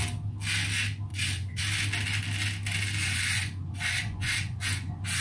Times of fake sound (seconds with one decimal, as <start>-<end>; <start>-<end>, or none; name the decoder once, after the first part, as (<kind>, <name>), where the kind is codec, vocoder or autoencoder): 1.1-1.6 (vocoder, Vocos); 3.0-5.2